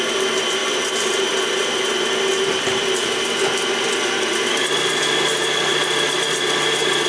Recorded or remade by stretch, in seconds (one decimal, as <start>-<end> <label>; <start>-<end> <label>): 0.0-0.6 recorded; 0.6-1.2 remade; 1.2-2.5 recorded; 2.5-5.0 remade; 5.0-5.7 recorded; 5.7-6.3 remade; 6.3-7.1 recorded